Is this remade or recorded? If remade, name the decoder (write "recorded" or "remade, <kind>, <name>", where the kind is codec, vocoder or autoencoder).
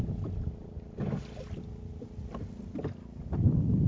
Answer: recorded